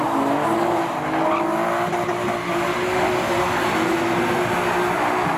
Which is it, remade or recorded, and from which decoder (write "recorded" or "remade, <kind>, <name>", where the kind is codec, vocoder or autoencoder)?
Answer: recorded